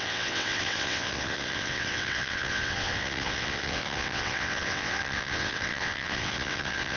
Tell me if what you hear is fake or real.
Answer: fake